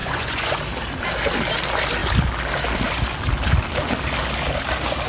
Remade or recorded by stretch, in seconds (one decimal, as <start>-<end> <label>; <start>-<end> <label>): 0.0-0.6 remade; 0.6-5.1 recorded